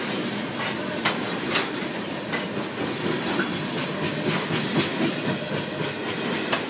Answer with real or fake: real